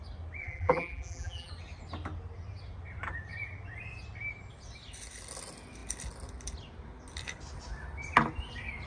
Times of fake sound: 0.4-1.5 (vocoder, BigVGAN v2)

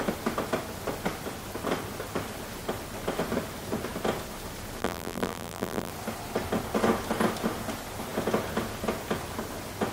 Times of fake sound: 4.8-5.9 (vocoder, BigVGAN v2)

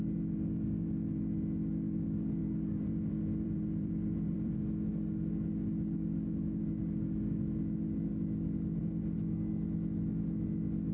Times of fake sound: 2.4-4.6 (vocoder, BigVGAN v2)